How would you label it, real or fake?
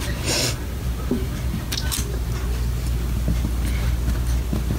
real